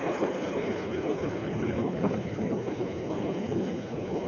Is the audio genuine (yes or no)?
no